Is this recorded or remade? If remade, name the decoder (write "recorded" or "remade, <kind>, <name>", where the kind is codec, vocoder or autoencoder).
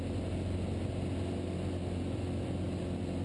recorded